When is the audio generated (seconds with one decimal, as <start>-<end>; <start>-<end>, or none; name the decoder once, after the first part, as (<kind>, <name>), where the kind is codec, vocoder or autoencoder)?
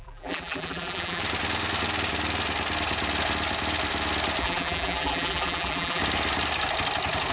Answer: 0.0-1.2 (vocoder, BigVGAN v2); 4.4-6.0